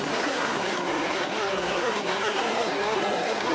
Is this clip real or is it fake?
fake